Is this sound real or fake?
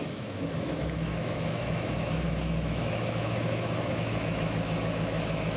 fake